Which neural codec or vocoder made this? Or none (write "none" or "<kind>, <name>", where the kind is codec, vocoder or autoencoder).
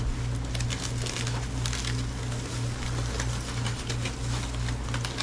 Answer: none